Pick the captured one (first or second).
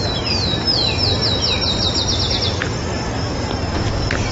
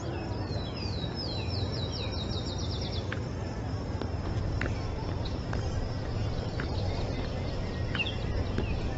first